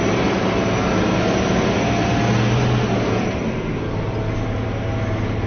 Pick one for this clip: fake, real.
real